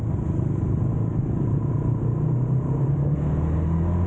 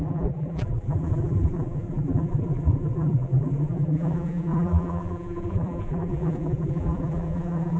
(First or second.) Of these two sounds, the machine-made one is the second